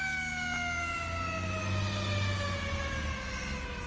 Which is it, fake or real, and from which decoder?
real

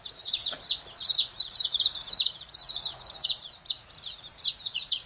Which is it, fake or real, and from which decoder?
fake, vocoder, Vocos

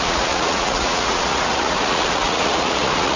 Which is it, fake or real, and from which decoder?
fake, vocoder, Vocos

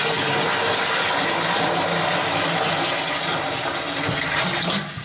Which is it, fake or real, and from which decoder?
real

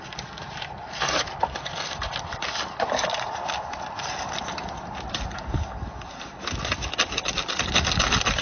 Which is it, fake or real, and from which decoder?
real